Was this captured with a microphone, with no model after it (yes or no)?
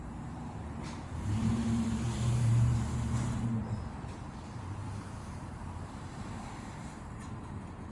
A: no